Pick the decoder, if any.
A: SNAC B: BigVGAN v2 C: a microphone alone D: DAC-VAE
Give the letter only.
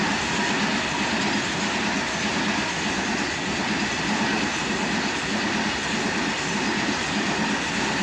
C